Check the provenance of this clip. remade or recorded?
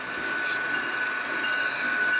recorded